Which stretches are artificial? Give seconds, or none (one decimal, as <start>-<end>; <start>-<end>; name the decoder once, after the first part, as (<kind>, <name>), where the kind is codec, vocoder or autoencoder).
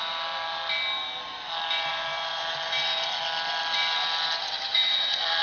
none